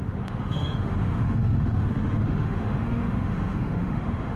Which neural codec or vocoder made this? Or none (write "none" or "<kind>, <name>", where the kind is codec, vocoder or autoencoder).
autoencoder, DAC-VAE